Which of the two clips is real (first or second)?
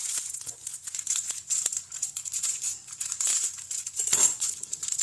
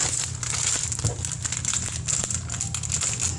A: second